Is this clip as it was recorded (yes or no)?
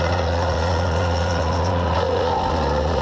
no